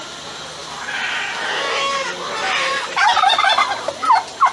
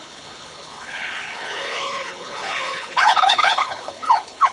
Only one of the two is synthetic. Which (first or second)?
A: second